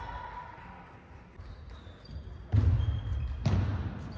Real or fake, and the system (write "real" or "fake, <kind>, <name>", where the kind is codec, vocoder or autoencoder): real